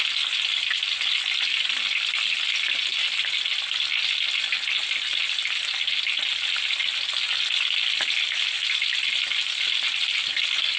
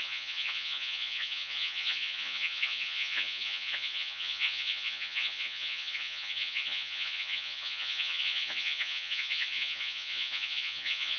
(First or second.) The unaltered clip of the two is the first